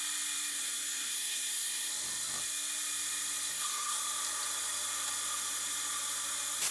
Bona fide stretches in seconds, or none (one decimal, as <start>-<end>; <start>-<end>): 0.0-0.5; 1.9-3.5; 4.0-6.7